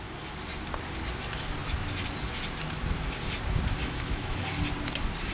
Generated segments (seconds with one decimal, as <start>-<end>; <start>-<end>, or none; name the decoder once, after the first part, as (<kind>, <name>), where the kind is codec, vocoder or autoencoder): 3.8-4.4 (autoencoder, DAC-VAE)